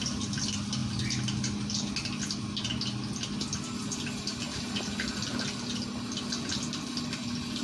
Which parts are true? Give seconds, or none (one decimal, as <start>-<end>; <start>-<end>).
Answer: 0.0-7.6